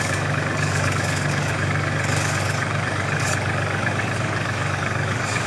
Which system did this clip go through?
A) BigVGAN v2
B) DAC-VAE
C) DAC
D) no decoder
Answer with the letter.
C